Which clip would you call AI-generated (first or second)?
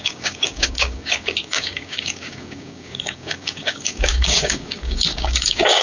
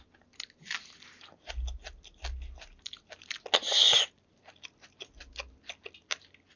first